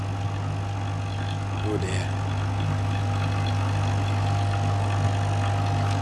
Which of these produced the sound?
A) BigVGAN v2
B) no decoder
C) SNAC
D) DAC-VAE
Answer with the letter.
B